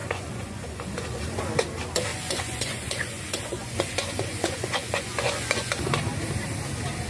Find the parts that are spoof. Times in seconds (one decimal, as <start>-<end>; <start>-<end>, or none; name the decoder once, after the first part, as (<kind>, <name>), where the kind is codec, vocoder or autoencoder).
0.0-1.4 (vocoder, Vocos); 2.1-5.7